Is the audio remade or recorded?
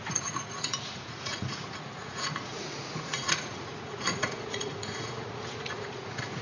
remade